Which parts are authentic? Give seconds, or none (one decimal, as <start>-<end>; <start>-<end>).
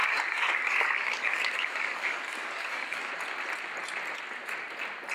3.1-5.1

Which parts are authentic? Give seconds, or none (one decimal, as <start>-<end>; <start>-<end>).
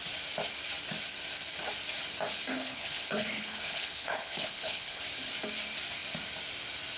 0.0-2.5; 5.0-7.0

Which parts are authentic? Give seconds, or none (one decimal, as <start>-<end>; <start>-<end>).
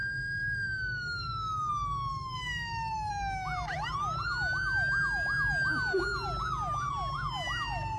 1.7-2.1; 3.1-8.0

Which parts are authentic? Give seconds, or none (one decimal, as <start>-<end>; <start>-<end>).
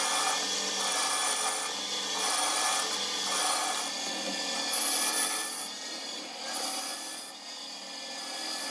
0.0-8.7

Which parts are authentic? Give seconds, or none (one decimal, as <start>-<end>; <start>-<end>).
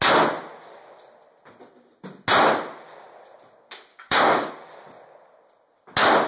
0.0-3.9; 4.5-6.3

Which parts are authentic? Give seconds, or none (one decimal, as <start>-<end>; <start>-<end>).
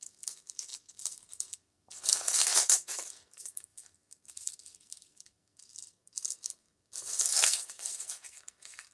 none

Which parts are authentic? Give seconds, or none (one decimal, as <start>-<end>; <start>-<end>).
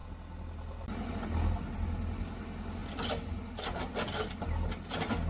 0.0-2.8; 4.4-5.3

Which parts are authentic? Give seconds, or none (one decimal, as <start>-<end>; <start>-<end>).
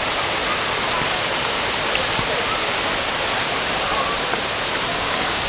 0.0-4.9